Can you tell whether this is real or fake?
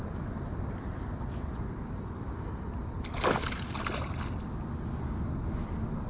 real